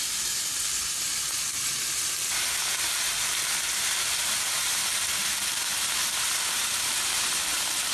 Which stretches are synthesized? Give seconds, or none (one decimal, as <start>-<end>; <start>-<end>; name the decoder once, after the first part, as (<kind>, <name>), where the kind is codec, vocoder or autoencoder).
0.0-7.9 (vocoder, BigVGAN v2)